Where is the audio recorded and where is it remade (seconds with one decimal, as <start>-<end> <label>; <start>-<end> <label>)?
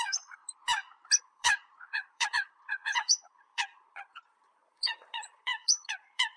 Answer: 0.0-0.4 remade; 0.4-1.2 recorded; 1.2-6.4 remade